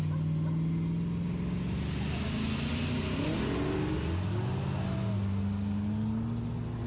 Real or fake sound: real